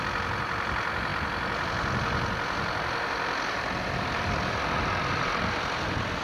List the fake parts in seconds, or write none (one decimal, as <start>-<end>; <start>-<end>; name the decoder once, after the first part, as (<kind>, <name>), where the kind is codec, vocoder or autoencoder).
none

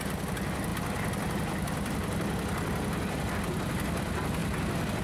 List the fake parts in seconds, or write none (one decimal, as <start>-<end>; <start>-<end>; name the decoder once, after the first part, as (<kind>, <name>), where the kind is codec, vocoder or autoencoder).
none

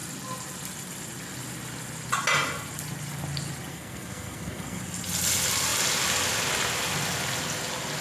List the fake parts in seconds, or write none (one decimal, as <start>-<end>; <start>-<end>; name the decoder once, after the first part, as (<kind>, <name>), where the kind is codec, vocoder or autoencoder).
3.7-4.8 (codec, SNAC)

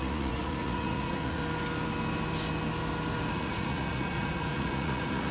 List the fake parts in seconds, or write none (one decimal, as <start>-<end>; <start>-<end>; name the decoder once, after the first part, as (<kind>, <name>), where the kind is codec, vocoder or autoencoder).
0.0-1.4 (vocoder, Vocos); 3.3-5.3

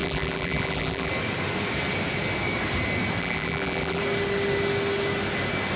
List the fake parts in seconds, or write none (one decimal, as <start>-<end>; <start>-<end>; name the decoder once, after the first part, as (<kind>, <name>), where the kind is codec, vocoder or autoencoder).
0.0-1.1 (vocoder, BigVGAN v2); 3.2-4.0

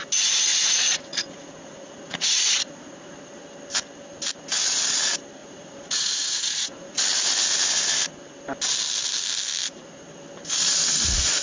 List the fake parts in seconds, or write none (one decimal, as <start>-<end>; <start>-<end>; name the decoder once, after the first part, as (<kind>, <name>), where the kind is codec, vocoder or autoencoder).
0.5-3.1 (vocoder, Vocos); 5.4-7.0

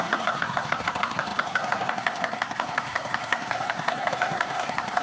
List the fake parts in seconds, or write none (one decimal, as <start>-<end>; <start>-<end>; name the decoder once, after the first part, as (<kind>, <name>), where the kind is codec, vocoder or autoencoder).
0.0-5.0 (codec, SNAC)

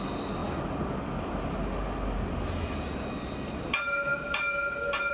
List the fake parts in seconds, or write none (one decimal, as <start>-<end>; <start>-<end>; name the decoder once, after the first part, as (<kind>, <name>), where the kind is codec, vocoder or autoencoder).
none